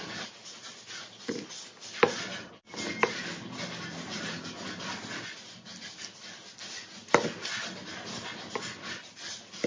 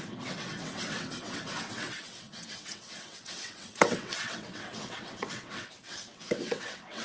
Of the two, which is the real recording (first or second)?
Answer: first